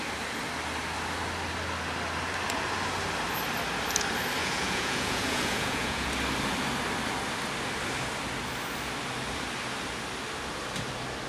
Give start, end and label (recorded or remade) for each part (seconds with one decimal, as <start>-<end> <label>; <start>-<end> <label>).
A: 0.0-4.4 recorded; 4.4-6.1 remade; 6.1-11.3 recorded

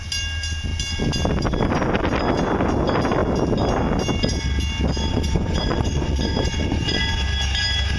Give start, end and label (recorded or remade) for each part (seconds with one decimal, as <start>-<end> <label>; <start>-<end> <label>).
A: 0.0-5.1 recorded; 5.1-7.0 remade; 7.0-8.0 recorded

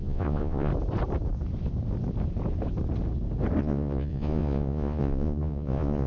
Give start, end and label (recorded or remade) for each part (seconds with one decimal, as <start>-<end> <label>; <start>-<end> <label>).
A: 0.0-0.7 remade; 0.7-3.6 recorded; 3.6-6.1 remade

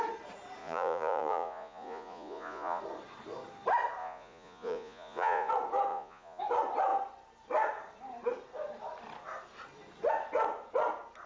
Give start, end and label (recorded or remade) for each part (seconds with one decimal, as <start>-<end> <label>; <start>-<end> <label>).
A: 0.0-0.6 recorded; 0.6-2.8 remade; 2.8-4.0 recorded; 4.0-5.5 remade; 5.5-5.9 recorded; 5.9-6.4 remade; 6.4-11.3 recorded